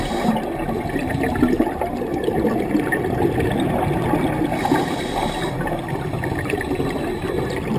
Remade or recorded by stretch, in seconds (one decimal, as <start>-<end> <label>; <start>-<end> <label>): 0.0-7.8 recorded